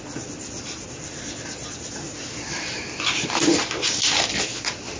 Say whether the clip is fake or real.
real